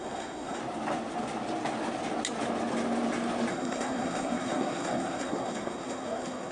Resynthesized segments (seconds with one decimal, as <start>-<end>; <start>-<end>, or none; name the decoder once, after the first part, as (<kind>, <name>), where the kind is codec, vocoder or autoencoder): 0.0-0.6 (codec, SNAC); 3.5-6.5